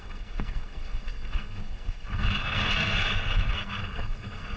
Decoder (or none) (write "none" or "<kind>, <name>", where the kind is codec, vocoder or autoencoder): codec, SNAC